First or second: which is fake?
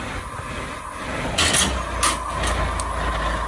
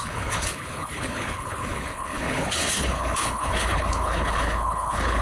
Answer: second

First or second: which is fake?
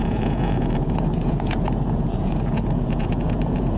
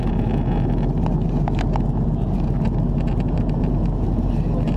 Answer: first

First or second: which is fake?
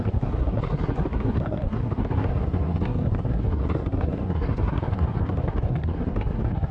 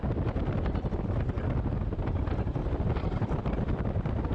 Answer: first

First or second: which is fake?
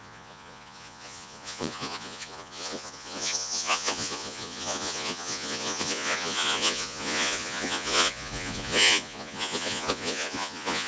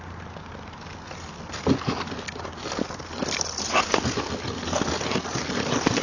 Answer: first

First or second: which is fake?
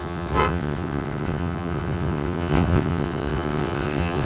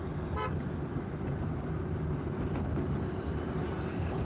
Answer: first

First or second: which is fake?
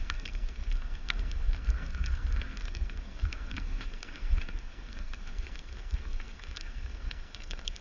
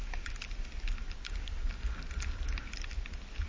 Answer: first